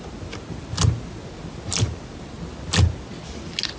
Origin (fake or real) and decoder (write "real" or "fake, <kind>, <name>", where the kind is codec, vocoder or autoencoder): real